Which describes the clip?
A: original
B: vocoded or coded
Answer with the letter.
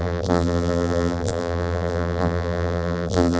B